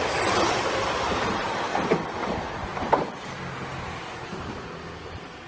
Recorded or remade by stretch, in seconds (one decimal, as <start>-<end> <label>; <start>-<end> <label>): 0.0-5.5 recorded